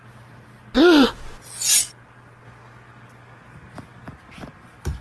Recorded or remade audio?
recorded